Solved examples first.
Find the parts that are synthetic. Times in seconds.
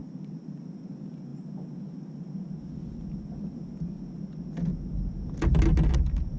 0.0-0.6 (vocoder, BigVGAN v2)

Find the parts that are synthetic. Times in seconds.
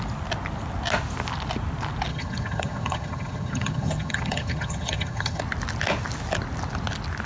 2.1-5.4 (vocoder, HiFi-GAN)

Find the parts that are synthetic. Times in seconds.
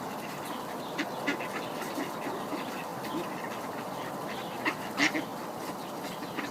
none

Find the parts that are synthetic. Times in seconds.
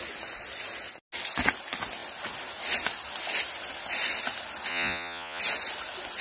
4.7-5.4 (vocoder, Vocos)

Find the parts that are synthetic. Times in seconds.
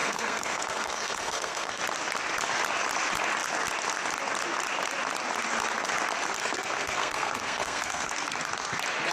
0.0-1.8 (codec, SNAC); 6.4-8.1